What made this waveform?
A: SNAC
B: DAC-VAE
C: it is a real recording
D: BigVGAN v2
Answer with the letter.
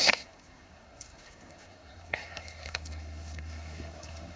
A